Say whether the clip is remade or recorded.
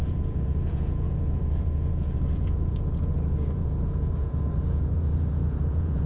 remade